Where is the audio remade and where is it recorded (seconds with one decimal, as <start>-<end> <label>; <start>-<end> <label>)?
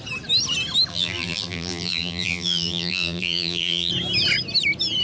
0.0-0.9 recorded; 0.9-3.9 remade; 3.9-5.0 recorded